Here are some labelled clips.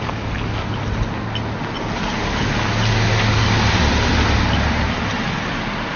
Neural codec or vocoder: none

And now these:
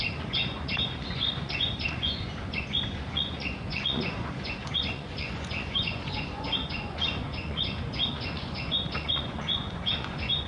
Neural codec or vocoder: vocoder, Vocos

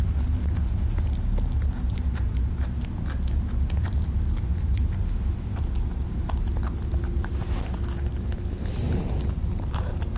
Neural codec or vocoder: none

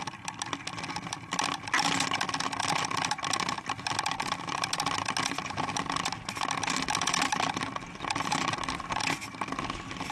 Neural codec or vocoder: none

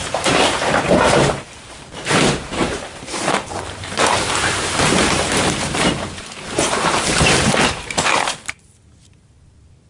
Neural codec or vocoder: vocoder, BigVGAN v2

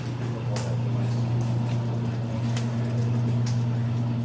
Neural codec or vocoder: none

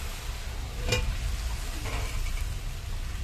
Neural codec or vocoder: none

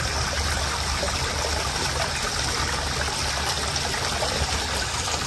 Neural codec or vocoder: none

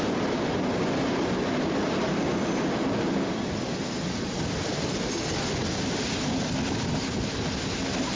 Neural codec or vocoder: none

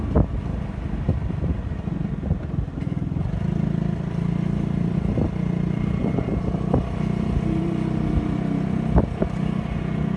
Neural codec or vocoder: none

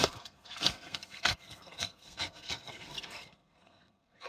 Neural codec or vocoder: codec, SNAC